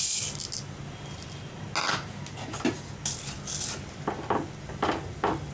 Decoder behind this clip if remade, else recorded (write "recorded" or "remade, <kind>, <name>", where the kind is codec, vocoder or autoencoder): recorded